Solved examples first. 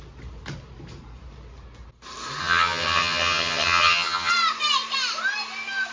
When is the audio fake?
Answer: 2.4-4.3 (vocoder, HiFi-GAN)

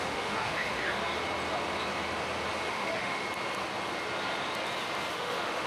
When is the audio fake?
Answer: 0.0-1.0 (autoencoder, DAC-VAE); 2.7-3.2; 5.1-5.7

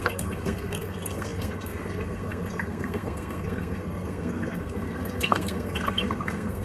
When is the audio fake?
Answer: 0.0-6.6 (codec, SNAC)

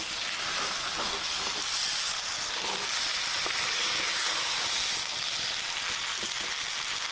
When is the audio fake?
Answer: none

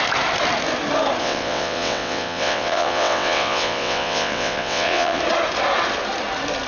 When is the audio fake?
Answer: 1.2-5.2 (vocoder, WaveNeXt)